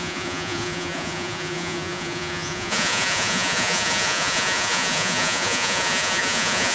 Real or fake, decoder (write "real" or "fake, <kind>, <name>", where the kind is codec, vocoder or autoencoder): fake, vocoder, Vocos